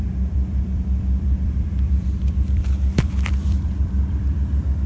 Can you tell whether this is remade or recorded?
remade